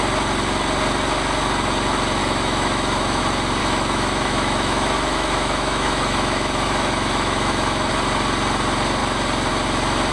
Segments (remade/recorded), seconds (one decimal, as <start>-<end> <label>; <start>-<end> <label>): 0.0-2.2 recorded; 2.2-3.2 remade; 3.2-3.6 recorded; 3.6-7.9 remade; 7.9-10.1 recorded